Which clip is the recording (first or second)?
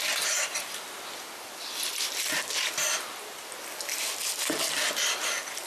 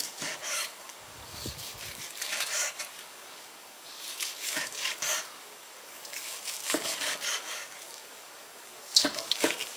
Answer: first